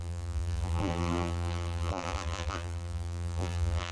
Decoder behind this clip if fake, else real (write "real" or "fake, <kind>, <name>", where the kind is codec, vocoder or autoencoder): fake, vocoder, BigVGAN v2